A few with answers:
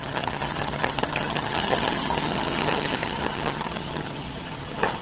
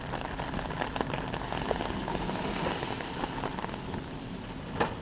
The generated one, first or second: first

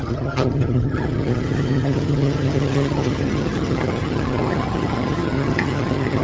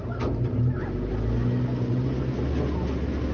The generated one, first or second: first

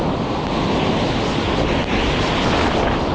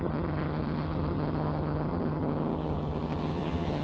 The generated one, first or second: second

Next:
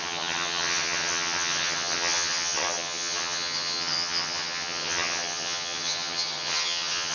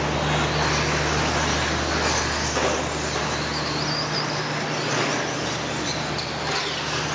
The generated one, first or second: first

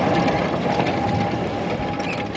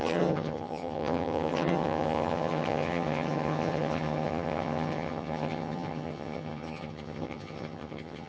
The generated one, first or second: second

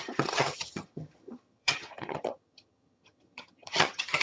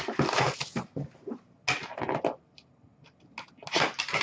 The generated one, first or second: first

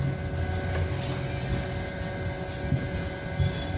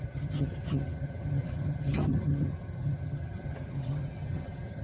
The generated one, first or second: second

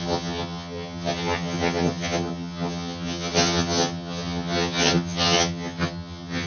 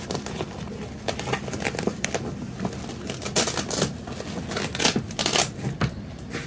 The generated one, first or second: first